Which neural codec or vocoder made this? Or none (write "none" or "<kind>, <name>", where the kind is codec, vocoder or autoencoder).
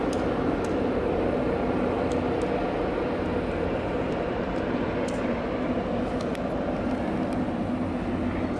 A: none